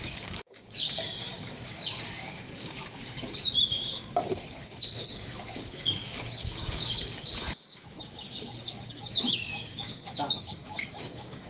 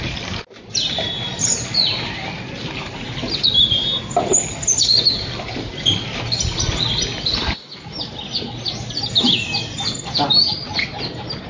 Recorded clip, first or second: second